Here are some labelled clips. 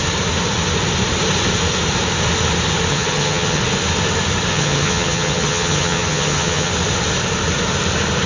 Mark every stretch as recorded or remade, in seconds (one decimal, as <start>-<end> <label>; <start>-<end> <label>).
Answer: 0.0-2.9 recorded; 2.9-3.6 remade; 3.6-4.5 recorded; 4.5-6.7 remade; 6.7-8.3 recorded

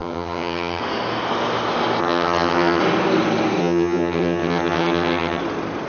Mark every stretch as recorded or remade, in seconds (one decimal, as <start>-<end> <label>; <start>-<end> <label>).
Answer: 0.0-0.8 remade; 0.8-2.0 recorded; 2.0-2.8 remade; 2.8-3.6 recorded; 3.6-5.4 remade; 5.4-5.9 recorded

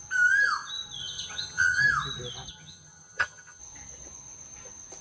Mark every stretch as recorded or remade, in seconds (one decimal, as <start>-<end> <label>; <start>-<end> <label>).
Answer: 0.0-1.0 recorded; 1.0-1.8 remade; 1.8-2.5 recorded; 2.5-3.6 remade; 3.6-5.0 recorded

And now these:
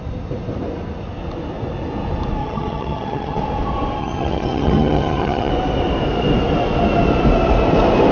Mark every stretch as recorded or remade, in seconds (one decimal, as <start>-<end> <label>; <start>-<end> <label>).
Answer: 0.0-2.4 recorded; 2.4-3.4 remade; 3.4-4.0 recorded; 4.0-5.5 remade; 5.5-8.1 recorded